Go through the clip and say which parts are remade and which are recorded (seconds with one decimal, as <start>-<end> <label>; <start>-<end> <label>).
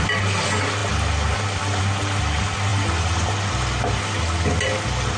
0.0-5.2 recorded